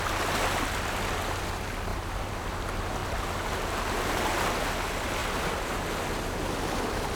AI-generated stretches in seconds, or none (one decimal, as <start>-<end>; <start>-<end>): 1.9-2.5; 5.2-5.7